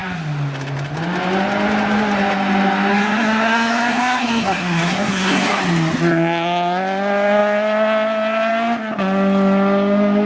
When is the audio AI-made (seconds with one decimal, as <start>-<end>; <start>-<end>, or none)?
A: 2.9-5.6